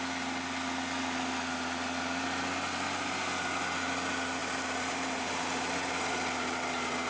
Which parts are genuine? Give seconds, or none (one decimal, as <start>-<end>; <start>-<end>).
0.0-4.4; 6.0-7.1

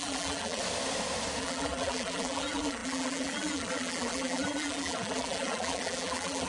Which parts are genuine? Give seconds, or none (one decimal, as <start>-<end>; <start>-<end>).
0.6-1.4

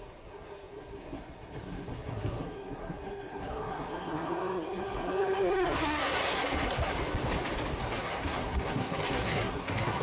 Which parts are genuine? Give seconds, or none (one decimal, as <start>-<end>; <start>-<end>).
7.0-7.8

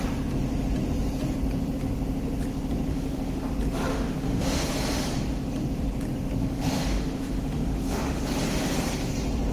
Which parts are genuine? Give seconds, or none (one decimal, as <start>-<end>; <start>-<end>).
0.0-2.9; 3.5-3.9; 4.7-6.4; 8.2-9.5

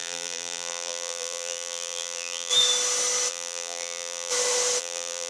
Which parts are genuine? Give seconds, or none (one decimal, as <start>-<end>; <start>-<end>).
2.5-3.3; 4.3-4.8

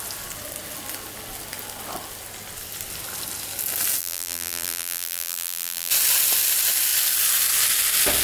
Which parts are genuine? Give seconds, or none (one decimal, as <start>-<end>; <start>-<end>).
0.0-4.0; 5.9-8.2

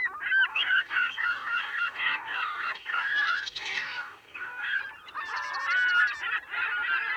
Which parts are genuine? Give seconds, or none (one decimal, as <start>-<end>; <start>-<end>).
0.0-0.5; 4.8-7.2